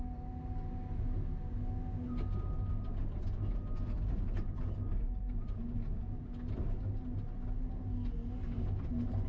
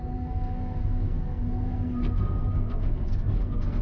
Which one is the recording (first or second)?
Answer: first